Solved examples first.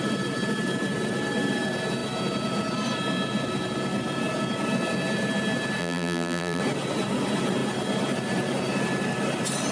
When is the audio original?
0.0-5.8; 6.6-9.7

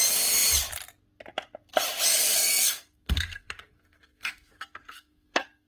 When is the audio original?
0.0-2.1

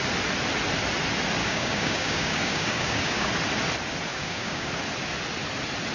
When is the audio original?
0.0-1.4; 3.3-4.1; 4.7-5.9

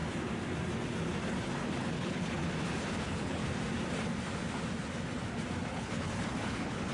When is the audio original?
0.0-1.8; 2.4-3.0; 3.4-5.7